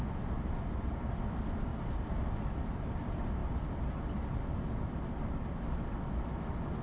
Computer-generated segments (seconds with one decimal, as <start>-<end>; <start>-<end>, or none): 1.7-2.6